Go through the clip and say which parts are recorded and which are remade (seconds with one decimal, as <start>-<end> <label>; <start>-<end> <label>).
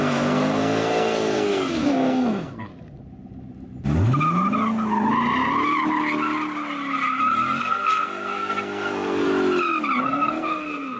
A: 0.0-2.7 remade; 2.7-7.6 recorded; 7.6-9.3 remade; 9.3-10.0 recorded; 10.0-11.0 remade